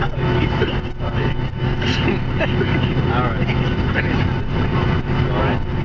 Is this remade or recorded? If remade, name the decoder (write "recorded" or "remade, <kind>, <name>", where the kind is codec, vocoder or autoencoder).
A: recorded